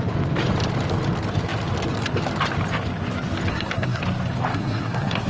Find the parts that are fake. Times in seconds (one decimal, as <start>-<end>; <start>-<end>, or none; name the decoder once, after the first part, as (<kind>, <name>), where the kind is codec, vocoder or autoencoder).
3.5-4.0 (codec, SNAC); 4.5-5.3